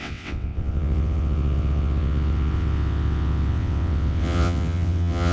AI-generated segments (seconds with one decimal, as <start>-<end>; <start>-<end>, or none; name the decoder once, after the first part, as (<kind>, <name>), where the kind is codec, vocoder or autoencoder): 0.0-5.3 (vocoder, WaveNeXt)